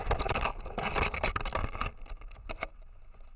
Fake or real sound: real